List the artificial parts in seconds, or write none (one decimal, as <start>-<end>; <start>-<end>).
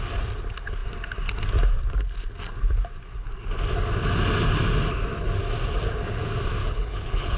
6.6-7.4